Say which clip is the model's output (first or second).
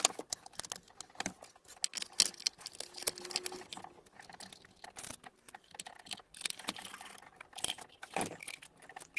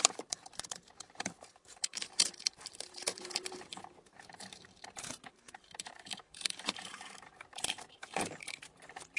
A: second